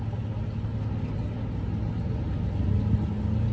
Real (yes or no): yes